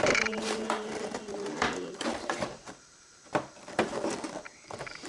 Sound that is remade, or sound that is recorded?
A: remade